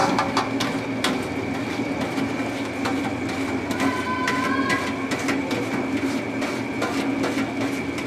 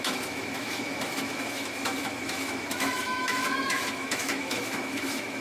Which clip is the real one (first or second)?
first